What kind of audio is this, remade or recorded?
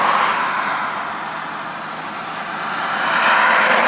recorded